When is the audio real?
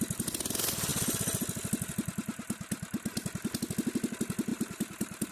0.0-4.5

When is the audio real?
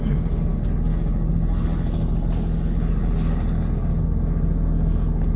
0.0-5.4